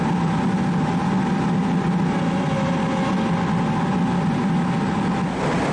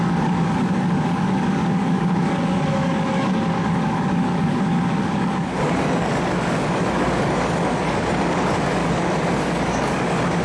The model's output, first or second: second